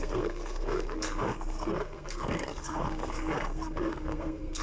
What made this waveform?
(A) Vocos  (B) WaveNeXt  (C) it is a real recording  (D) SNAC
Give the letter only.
D